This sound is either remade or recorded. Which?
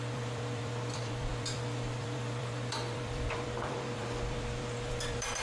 remade